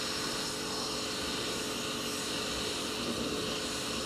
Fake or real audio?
real